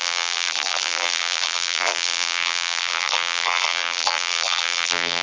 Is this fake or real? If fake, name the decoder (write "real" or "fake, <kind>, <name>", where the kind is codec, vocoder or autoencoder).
fake, vocoder, BigVGAN v2